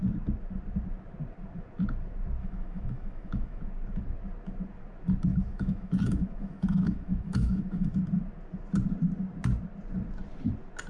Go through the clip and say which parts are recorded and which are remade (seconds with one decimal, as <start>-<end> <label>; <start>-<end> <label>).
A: 0.0-2.4 recorded; 2.4-3.6 remade; 3.6-5.3 recorded; 5.3-8.0 remade; 8.0-10.9 recorded